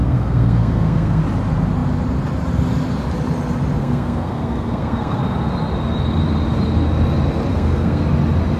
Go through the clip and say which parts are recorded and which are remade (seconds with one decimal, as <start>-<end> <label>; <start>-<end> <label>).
0.0-1.2 remade; 1.2-3.8 recorded; 3.8-5.2 remade; 5.2-7.5 recorded; 7.5-8.0 remade; 8.0-8.6 recorded